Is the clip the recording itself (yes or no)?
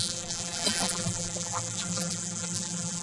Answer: no